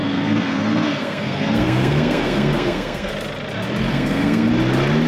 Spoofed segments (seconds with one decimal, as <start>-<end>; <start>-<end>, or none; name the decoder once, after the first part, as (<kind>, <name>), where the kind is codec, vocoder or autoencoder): 0.0-3.1 (codec, SNAC); 3.9-4.5